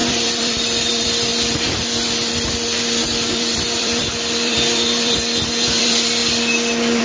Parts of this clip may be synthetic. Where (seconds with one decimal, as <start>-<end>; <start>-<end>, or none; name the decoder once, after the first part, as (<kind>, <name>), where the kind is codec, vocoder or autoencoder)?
0.0-6.2 (vocoder, BigVGAN v2)

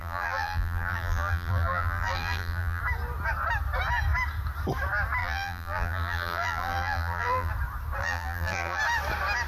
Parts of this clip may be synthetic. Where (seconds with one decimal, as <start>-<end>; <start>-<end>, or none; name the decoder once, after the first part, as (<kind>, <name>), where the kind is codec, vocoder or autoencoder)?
0.0-2.8 (vocoder, BigVGAN v2); 5.2-7.5; 8.0-8.8

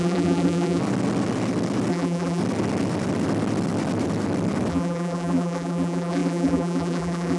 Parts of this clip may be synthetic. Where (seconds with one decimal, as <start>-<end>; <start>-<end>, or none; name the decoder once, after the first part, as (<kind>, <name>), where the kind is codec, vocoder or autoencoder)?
0.0-0.8 (vocoder, BigVGAN v2); 1.9-2.4; 4.7-7.4

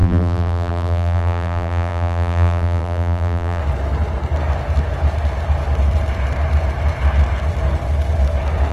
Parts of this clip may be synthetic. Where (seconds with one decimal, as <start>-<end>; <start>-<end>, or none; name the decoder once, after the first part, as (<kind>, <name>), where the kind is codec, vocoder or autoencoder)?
0.0-3.6 (vocoder, BigVGAN v2)

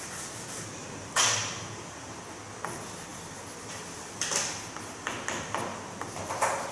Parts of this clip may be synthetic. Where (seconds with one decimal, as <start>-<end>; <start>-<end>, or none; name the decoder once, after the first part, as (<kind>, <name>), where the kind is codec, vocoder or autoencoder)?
0.8-2.2 (vocoder, BigVGAN v2)

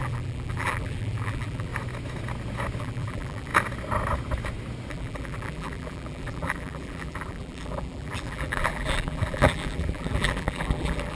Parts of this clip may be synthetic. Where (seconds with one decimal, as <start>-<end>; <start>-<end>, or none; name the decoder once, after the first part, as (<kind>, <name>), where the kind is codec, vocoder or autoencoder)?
0.0-1.7 (vocoder, BigVGAN v2); 2.8-3.5; 4.9-11.1

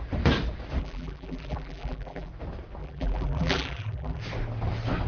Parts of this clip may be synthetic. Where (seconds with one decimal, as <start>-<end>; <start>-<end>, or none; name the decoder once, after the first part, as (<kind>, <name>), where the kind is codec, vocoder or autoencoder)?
0.8-2.3 (vocoder, BigVGAN v2); 2.8-4.2